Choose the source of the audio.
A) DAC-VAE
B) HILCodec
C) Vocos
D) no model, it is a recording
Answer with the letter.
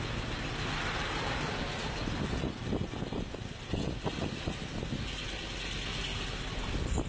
D